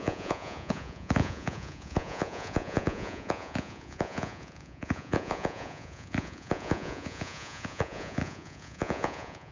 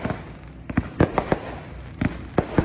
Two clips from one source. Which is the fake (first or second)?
first